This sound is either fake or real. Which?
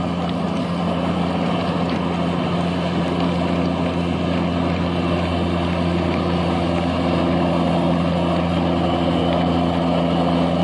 real